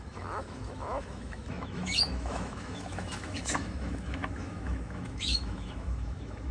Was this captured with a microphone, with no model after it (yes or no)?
no